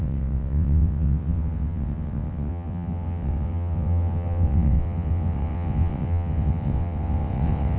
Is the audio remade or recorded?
remade